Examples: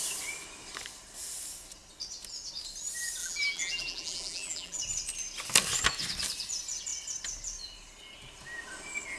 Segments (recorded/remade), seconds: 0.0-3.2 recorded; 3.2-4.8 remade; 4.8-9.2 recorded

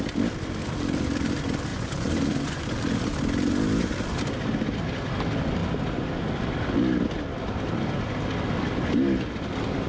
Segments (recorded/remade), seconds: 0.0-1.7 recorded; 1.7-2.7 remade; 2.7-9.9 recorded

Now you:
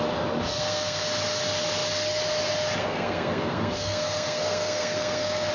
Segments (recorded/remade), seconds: 0.0-0.5 recorded; 0.5-1.0 remade; 1.0-2.8 recorded; 2.8-5.5 remade

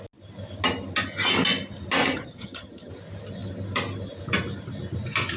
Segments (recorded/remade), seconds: 0.0-2.0 recorded; 2.0-2.9 remade; 2.9-5.4 recorded

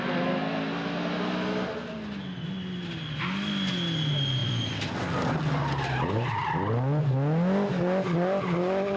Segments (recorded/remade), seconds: 0.0-4.4 recorded; 4.4-5.9 remade; 5.9-6.4 recorded; 6.4-7.0 remade; 7.0-9.0 recorded

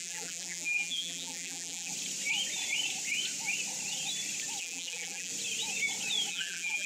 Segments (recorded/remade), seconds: 0.0-1.9 remade; 1.9-4.6 recorded; 4.6-5.3 remade; 5.3-6.3 recorded; 6.3-6.9 remade

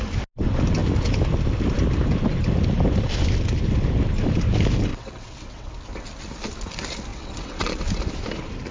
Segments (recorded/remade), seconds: 0.0-4.9 recorded; 4.9-5.7 remade; 5.7-7.1 recorded; 7.1-7.8 remade; 7.8-8.7 recorded

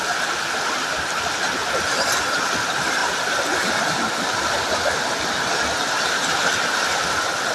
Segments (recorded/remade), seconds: 0.0-7.5 recorded